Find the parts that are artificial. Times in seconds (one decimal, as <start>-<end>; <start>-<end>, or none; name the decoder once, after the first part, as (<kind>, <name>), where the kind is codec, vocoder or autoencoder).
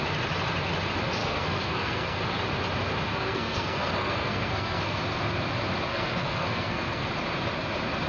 1.2-2.2 (codec, SNAC); 3.1-5.0; 5.9-7.1